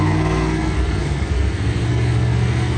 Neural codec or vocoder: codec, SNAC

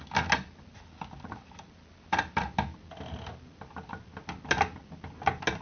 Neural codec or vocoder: none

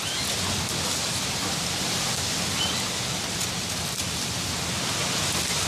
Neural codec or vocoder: none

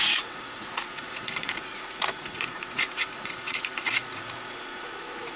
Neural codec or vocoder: vocoder, Vocos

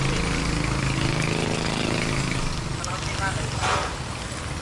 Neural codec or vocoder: none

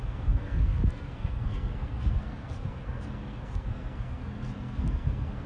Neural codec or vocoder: codec, SNAC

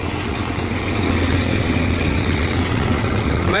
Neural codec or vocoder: vocoder, WaveNeXt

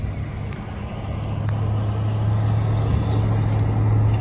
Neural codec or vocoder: none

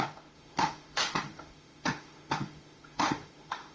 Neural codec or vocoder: autoencoder, DAC-VAE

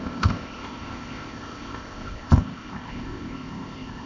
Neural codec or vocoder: codec, ZipCodec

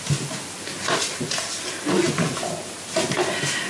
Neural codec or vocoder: none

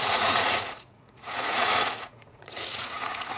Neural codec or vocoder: vocoder, Vocos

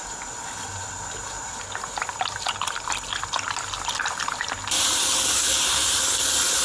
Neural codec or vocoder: none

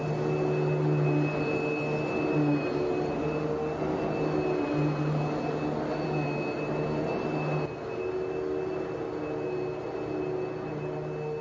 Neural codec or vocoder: none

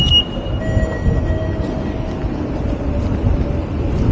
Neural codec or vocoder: none